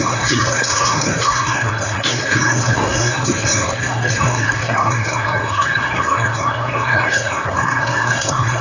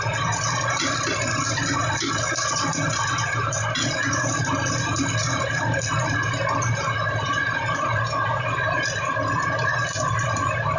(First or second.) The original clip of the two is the second